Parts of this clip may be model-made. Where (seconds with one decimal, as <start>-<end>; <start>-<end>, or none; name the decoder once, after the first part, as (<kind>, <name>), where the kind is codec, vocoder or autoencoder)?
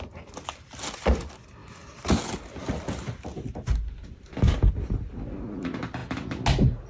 none